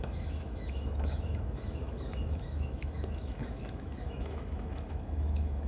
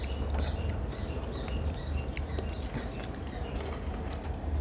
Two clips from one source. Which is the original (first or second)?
second